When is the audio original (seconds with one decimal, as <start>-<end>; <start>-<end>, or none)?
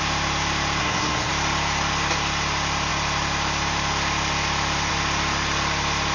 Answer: 0.0-0.8; 1.3-6.1